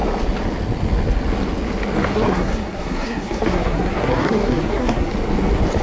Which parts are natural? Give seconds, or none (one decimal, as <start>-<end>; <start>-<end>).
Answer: 0.0-2.1; 5.1-5.8